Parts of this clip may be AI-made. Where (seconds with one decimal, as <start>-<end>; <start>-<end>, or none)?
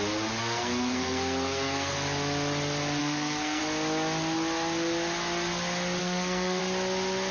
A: 0.4-1.9; 3.0-3.6; 6.0-6.6